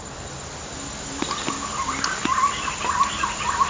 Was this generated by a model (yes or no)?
no